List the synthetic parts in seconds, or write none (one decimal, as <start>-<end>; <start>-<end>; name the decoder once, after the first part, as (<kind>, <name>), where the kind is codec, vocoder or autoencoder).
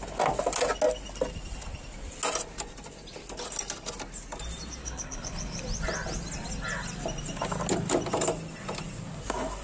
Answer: 4.8-5.6 (codec, HILCodec)